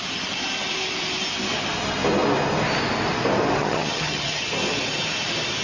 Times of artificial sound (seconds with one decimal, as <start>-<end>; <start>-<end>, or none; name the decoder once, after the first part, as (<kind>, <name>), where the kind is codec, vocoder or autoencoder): 3.6-4.4 (vocoder, HiFi-GAN)